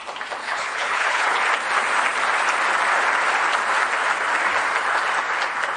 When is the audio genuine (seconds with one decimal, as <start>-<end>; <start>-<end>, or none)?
0.0-0.4; 1.4-5.8

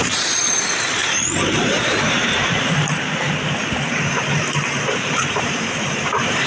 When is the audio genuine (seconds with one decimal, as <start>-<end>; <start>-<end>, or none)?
1.0-4.9